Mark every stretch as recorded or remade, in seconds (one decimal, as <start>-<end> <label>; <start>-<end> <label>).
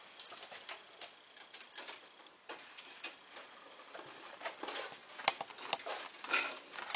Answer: 0.0-7.0 recorded